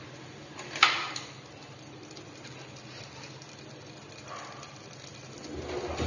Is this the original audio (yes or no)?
yes